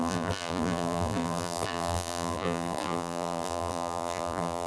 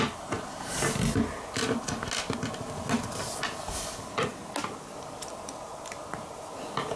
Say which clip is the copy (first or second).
first